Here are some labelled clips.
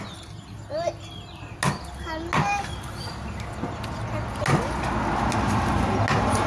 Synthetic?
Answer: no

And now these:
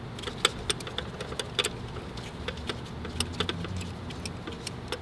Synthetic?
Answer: no